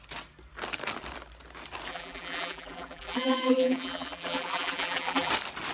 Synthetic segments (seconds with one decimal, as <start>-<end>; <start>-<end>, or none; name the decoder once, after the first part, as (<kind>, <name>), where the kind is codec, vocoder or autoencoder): 1.9-5.3 (vocoder, BigVGAN v2)